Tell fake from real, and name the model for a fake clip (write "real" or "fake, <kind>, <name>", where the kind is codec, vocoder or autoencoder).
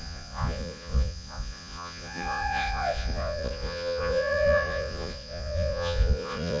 fake, vocoder, Vocos